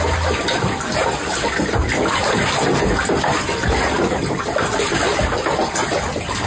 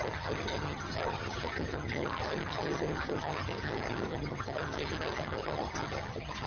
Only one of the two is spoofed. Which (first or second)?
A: second